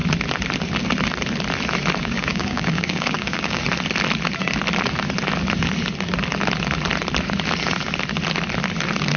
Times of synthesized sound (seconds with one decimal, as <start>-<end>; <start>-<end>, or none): 2.0-3.6

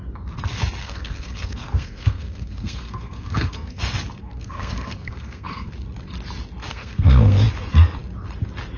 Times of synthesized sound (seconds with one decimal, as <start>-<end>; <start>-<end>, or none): 0.8-3.8; 4.2-5.7; 6.7-7.4

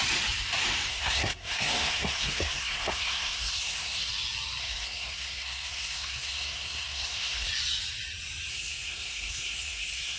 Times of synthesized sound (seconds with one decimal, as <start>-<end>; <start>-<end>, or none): 0.9-4.1; 4.6-7.5; 8.5-10.2

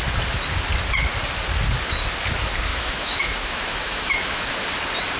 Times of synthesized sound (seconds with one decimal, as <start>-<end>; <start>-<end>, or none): 2.7-4.5